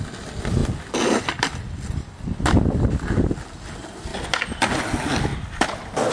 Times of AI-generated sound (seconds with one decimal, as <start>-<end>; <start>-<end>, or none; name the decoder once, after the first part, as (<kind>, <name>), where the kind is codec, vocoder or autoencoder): none